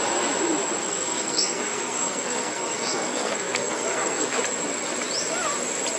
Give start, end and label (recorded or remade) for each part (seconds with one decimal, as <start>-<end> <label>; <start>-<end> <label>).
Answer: 0.0-0.8 recorded; 0.8-4.4 remade; 4.4-6.0 recorded